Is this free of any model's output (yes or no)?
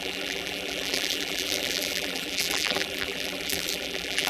no